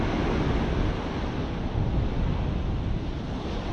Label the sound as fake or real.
real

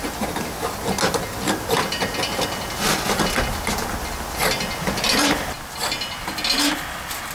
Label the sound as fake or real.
real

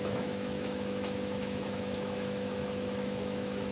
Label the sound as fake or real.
fake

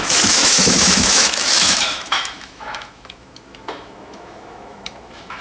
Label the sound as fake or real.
fake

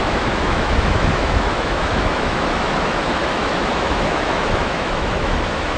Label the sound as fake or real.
fake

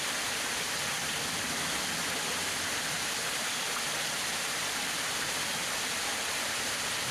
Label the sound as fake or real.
real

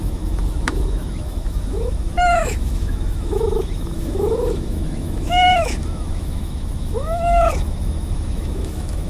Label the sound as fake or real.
fake